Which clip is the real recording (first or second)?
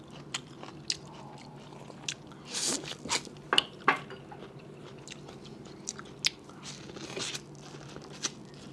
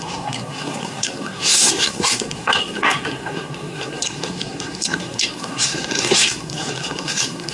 first